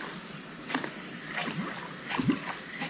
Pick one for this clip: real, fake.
real